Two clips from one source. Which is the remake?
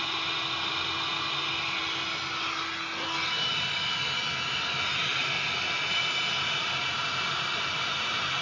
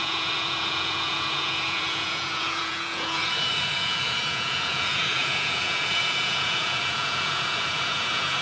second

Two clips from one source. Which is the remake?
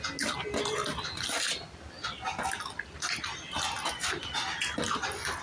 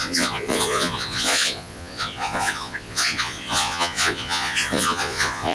second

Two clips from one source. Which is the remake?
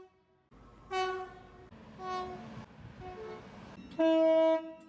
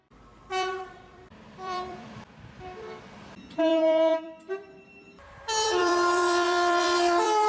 second